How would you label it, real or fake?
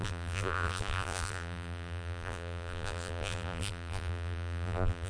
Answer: fake